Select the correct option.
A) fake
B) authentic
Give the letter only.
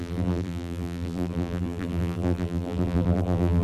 A